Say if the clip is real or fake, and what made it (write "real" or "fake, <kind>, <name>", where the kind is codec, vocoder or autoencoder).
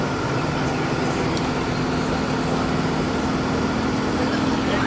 real